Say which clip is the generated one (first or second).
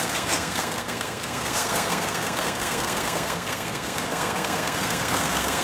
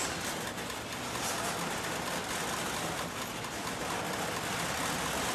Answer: first